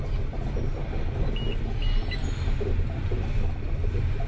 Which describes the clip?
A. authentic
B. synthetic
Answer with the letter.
A